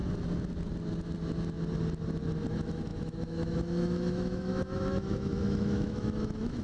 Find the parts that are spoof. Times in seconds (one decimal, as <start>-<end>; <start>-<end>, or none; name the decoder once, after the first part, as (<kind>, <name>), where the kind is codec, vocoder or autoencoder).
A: 2.5-6.6 (autoencoder, DAC-VAE)